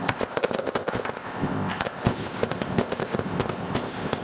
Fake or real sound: fake